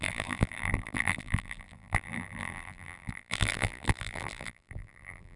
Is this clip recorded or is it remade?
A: remade